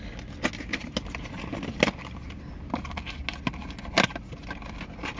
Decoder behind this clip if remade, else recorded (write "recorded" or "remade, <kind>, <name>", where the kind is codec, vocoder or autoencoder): recorded